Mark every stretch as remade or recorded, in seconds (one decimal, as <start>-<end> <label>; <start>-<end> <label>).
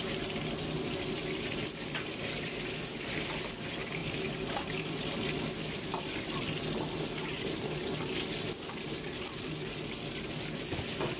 0.0-11.2 recorded